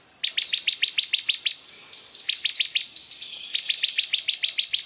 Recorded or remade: remade